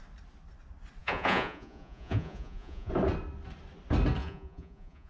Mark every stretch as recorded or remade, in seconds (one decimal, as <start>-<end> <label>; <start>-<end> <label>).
0.0-1.0 recorded; 1.0-2.9 remade; 2.9-4.2 recorded; 4.2-5.1 remade